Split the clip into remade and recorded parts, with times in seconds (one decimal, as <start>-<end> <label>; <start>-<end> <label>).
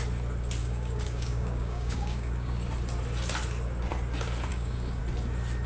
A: 0.0-0.6 recorded; 0.6-2.5 remade; 2.5-4.5 recorded; 4.5-5.0 remade; 5.0-5.7 recorded